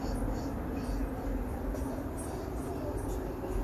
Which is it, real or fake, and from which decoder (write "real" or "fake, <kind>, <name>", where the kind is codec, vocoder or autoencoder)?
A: real